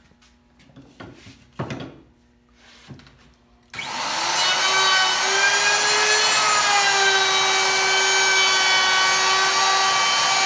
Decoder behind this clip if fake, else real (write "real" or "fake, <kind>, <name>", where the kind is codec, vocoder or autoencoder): real